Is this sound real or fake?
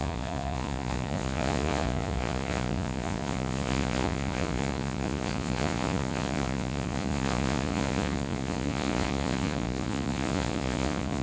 fake